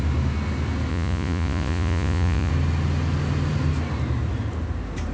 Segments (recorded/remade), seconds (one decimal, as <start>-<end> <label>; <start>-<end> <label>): 0.0-0.9 recorded; 0.9-2.5 remade; 2.5-5.1 recorded